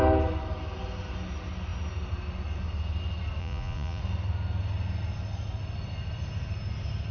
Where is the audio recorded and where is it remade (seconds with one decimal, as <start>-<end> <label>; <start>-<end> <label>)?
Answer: 0.0-3.4 recorded; 3.4-4.0 remade; 4.0-7.1 recorded